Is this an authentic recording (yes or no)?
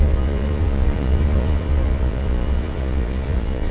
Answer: no